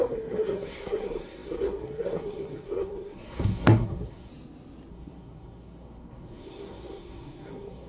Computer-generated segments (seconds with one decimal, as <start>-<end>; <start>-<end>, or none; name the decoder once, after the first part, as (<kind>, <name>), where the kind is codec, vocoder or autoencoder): 0.0-4.3 (codec, SNAC); 4.9-7.9